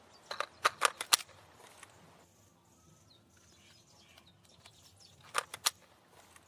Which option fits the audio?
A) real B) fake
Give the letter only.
A